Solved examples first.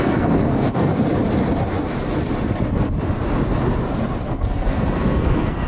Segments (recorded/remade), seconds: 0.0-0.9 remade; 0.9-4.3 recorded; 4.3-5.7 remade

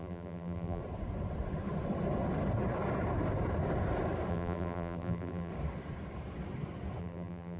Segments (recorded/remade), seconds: 0.0-0.8 remade; 0.8-4.3 recorded; 4.3-5.5 remade; 5.5-7.0 recorded; 7.0-7.6 remade

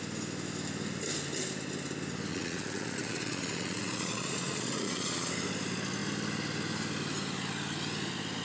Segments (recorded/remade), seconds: 0.0-2.3 recorded; 2.3-5.3 remade; 5.3-8.4 recorded

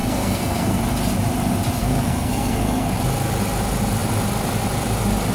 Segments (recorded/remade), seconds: 0.0-0.8 remade; 0.8-1.8 recorded; 1.8-3.0 remade; 3.0-5.3 recorded

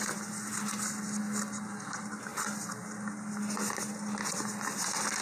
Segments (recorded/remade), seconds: 0.0-5.2 recorded

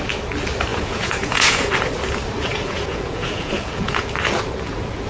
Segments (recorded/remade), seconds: 0.0-0.7 recorded; 0.7-1.7 remade; 1.7-2.5 recorded; 2.5-4.0 remade; 4.0-5.1 recorded

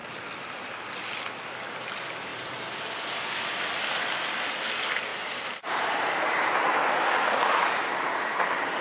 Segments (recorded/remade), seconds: 0.0-5.1 recorded; 5.1-6.1 remade; 6.1-8.8 recorded